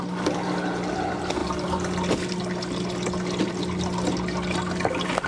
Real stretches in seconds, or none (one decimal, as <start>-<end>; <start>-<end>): 0.0-5.3